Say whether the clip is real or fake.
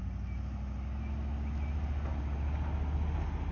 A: real